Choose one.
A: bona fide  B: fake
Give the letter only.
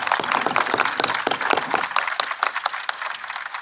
A